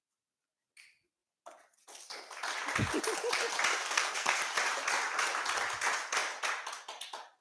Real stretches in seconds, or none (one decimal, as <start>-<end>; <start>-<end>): 0.0-3.7; 4.4-7.4